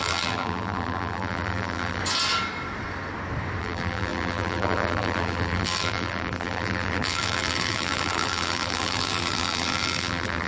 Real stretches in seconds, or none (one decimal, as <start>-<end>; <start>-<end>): 2.0-3.6